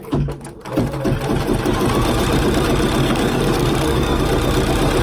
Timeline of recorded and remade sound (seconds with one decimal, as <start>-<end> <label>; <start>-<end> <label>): 0.0-3.0 recorded; 3.0-4.2 remade; 4.2-5.0 recorded